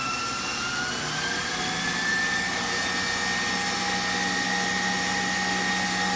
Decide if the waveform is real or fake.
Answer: real